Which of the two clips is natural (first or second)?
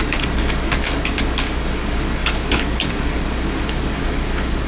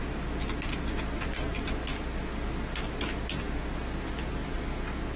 second